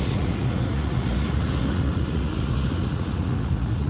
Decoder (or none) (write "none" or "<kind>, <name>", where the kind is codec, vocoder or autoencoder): vocoder, Vocos